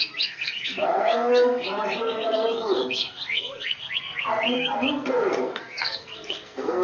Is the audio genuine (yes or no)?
no